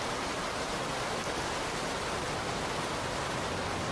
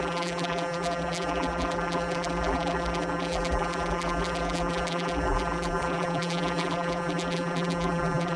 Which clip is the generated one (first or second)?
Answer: second